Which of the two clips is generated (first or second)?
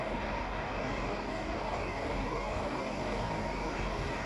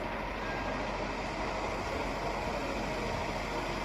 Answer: first